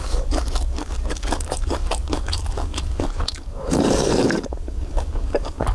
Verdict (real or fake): fake